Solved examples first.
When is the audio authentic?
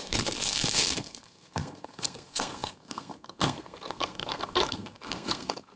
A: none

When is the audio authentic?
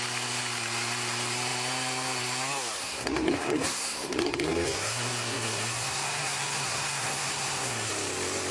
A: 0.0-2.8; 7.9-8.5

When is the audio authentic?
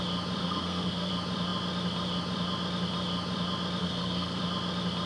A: 0.0-0.4; 1.1-3.8; 4.4-5.1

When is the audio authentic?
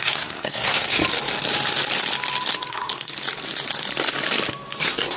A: 1.0-2.7; 3.1-4.8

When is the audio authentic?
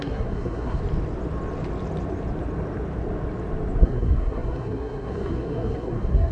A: 0.8-3.8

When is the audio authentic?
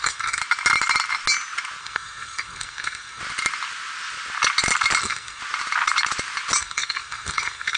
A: 0.4-1.8; 3.2-5.0; 5.4-6.6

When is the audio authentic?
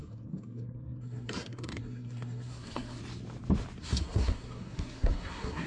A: 3.0-3.8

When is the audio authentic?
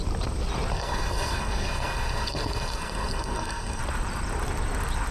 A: 0.0-0.7; 3.8-5.1